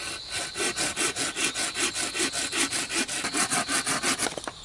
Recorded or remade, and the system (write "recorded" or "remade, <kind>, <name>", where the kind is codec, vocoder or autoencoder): recorded